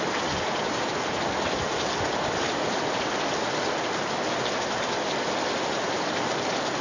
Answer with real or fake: fake